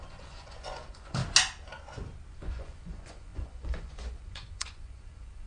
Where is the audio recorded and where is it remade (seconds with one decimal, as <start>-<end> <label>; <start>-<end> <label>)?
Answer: 0.0-1.2 remade; 1.2-2.3 recorded; 2.3-5.5 remade